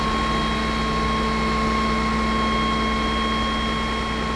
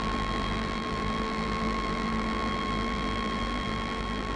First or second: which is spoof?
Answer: second